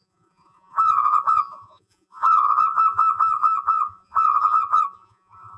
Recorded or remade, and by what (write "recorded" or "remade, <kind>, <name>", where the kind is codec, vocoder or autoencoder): remade, vocoder, Vocos